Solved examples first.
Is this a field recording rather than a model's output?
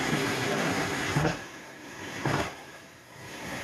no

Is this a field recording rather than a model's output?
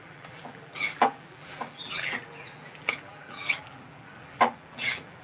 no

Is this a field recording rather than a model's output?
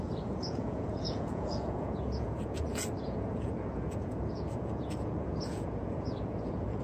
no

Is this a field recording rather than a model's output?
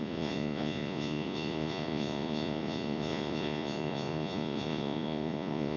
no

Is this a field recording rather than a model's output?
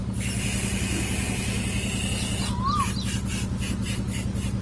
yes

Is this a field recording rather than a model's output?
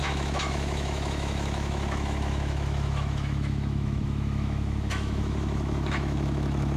no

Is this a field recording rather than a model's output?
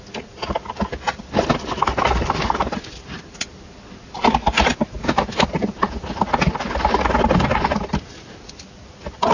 yes